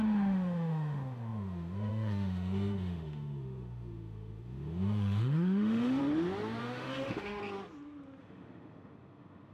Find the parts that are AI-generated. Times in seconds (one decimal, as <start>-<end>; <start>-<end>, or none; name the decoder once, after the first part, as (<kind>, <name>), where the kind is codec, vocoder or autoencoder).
0.0-6.0 (autoencoder, DAC-VAE); 6.6-7.4; 8.2-9.5